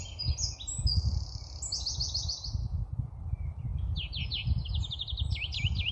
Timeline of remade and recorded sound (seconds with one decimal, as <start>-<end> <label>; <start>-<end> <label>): 0.0-5.9 recorded